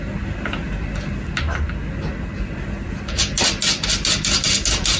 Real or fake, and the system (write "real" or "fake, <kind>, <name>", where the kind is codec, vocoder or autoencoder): real